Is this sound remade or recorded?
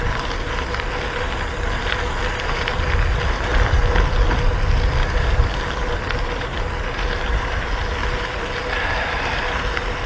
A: recorded